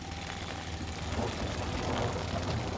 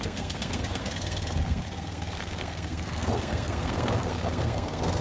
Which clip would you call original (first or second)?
first